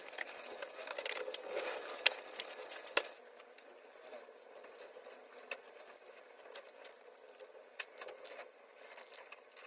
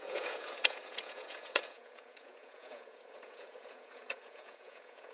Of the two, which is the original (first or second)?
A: first